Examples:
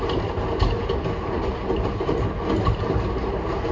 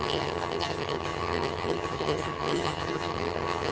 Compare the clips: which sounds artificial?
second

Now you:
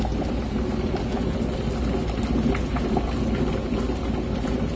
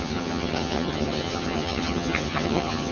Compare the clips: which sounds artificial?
second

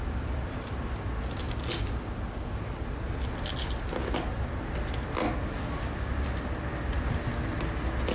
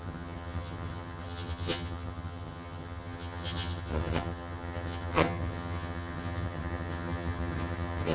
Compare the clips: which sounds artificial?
second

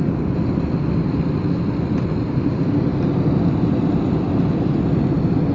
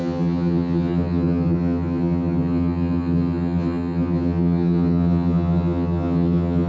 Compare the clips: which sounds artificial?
second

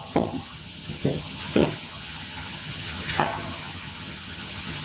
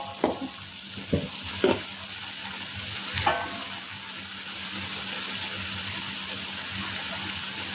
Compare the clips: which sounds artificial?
first